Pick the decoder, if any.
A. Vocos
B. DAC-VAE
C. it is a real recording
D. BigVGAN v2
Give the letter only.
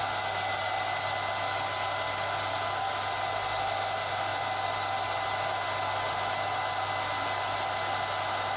C